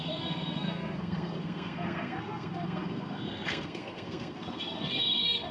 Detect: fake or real fake